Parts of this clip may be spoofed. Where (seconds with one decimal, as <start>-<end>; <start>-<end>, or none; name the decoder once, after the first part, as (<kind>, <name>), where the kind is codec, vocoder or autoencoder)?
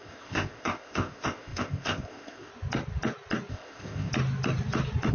0.0-2.5 (codec, ZipCodec); 3.5-4.1